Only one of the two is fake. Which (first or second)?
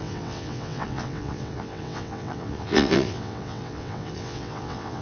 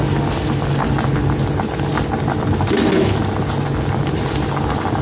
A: first